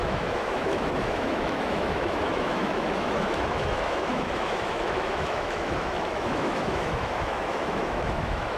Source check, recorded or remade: remade